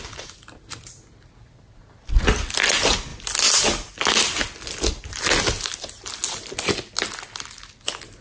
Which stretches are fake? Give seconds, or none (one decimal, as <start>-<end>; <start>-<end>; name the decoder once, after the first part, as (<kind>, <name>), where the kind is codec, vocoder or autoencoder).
none

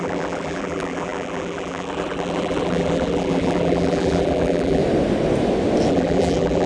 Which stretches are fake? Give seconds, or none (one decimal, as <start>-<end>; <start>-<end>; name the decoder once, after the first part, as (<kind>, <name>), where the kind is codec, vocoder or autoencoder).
0.0-4.8 (vocoder, BigVGAN v2); 5.9-6.7

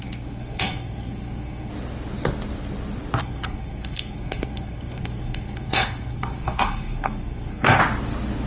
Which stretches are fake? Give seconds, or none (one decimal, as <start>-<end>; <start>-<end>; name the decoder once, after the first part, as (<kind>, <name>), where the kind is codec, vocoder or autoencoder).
0.0-1.7 (codec, SNAC); 3.2-7.8

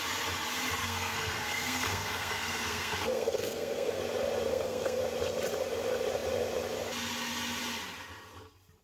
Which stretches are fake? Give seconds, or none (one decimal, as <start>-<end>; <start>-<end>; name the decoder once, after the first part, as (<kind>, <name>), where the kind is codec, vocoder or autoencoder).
0.8-4.0 (codec, SNAC); 4.5-5.0

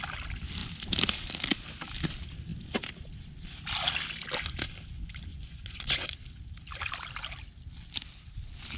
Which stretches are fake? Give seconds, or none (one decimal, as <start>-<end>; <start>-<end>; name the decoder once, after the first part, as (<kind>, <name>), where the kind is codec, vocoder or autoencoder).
5.3-6.1 (vocoder, Vocos)

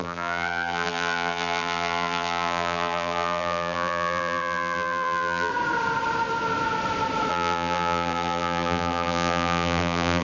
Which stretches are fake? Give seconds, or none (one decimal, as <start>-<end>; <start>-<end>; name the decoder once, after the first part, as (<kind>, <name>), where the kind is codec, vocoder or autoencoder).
0.0-5.5 (vocoder, BigVGAN v2); 7.3-10.2

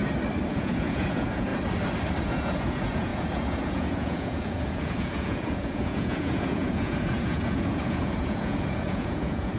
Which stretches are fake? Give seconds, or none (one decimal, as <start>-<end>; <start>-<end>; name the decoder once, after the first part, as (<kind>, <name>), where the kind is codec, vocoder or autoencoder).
0.5-1.5 (vocoder, Vocos); 2.2-9.6

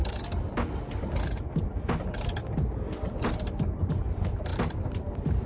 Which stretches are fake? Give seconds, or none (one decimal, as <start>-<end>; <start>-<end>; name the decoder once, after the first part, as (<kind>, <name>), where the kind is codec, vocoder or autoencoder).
0.0-0.8 (vocoder, BigVGAN v2); 4.5-5.5